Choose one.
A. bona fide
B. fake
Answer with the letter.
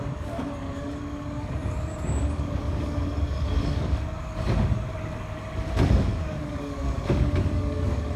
B